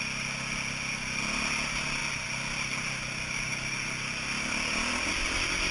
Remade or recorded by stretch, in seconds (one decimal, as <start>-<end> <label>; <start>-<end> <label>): 0.0-5.7 recorded